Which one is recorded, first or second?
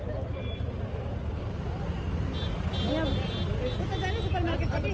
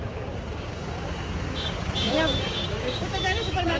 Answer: first